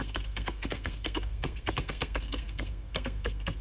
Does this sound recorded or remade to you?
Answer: remade